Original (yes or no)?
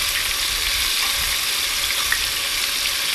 yes